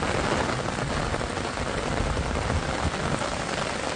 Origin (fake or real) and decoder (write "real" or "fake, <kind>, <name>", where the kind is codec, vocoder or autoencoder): real